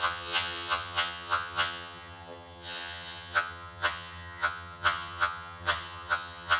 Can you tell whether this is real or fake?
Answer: fake